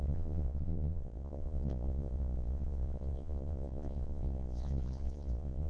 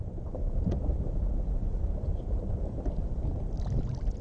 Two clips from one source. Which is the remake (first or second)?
first